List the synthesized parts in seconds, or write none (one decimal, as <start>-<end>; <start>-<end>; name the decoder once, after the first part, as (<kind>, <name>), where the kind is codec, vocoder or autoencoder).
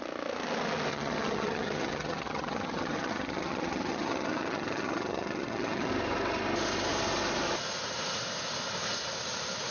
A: 0.9-5.9 (vocoder, HiFi-GAN)